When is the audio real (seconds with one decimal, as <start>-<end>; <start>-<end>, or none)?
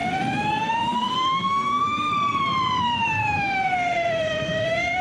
2.1-2.8